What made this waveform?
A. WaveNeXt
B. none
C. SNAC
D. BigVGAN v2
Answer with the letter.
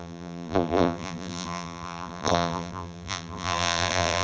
D